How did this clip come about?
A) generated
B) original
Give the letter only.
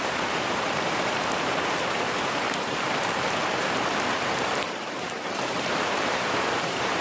A